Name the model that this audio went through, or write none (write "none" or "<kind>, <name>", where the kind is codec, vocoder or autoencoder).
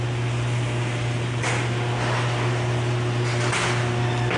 none